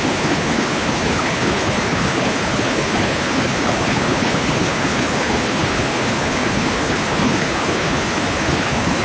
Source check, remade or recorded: remade